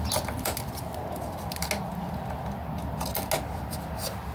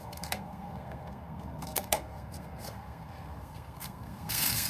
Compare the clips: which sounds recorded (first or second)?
first